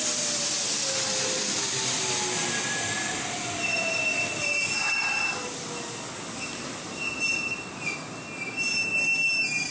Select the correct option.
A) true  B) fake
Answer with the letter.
A